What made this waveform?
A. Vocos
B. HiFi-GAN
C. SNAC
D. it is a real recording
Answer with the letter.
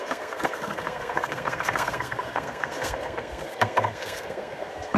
C